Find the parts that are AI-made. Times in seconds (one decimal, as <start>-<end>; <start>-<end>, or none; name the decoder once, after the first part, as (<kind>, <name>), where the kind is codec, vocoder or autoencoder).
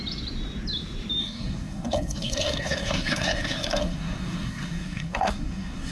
1.2-5.9 (codec, SNAC)